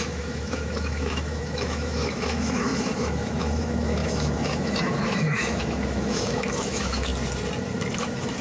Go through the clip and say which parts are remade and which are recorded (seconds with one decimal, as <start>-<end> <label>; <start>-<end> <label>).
0.0-7.1 remade; 7.1-8.0 recorded; 8.0-8.4 remade